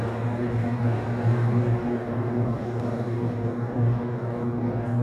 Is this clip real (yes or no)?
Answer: no